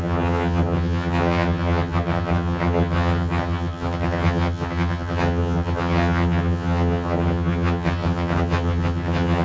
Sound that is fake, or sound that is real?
fake